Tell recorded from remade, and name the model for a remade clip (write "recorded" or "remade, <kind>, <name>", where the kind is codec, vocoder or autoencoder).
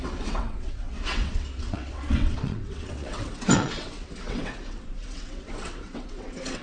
remade, vocoder, WaveNeXt